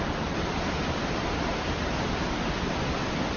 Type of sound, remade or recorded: remade